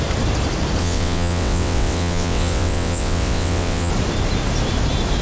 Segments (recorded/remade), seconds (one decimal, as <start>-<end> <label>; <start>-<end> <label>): 0.0-0.8 recorded; 0.8-3.9 remade; 3.9-5.2 recorded

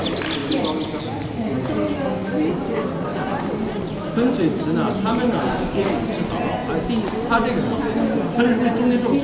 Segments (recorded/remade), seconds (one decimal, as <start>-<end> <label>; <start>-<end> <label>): 0.0-9.2 recorded

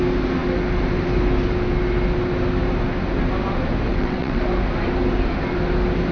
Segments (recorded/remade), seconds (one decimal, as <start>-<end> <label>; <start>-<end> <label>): 0.0-3.9 recorded; 3.9-4.4 remade; 4.4-6.1 recorded